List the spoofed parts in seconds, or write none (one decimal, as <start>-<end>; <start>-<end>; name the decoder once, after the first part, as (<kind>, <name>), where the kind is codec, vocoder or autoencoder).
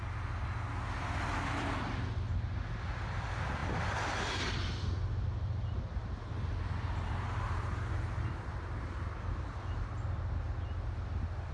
none